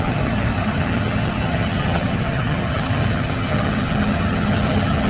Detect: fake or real fake